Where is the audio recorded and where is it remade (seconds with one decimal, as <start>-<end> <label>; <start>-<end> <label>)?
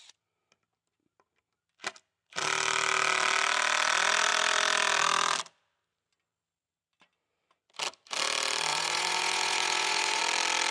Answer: 0.0-8.7 recorded; 8.7-10.2 remade; 10.2-10.7 recorded